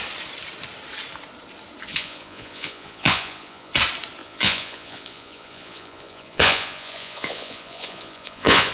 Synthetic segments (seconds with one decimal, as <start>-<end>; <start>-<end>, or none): 1.9-3.7; 4.2-8.7